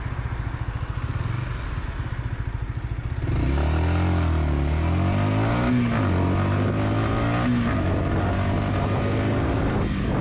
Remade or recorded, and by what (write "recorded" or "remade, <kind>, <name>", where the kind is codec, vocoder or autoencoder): recorded